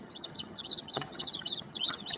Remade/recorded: remade